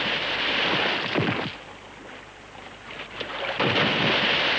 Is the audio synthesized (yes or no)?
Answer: no